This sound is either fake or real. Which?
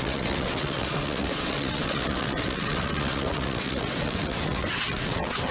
fake